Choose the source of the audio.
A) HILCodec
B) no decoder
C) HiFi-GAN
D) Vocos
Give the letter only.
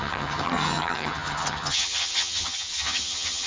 C